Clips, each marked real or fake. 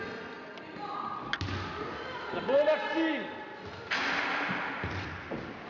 real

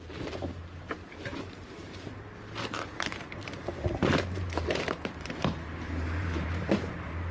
fake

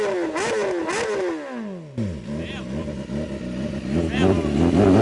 real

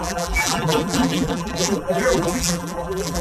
fake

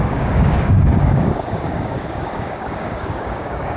fake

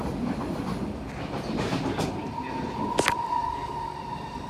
real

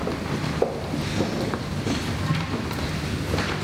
real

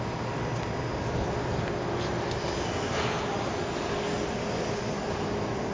real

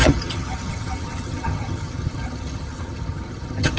fake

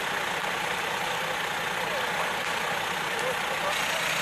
real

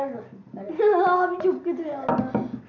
real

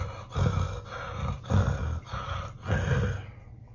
real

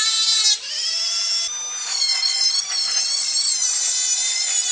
real